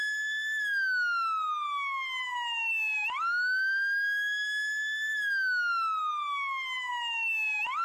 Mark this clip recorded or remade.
recorded